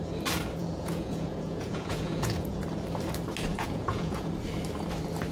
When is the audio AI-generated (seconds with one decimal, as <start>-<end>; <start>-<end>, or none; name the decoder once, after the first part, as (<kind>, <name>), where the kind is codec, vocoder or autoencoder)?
0.6-2.6 (vocoder, Vocos); 3.5-4.3